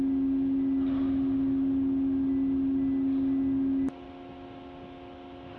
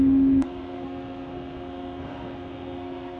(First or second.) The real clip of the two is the first